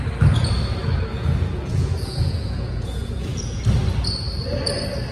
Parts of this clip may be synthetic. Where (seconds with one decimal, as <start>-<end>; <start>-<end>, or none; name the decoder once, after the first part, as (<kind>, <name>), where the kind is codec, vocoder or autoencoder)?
1.1-3.6 (vocoder, Vocos)